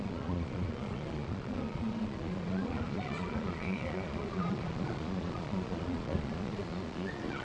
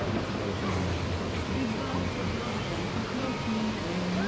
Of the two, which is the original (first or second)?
second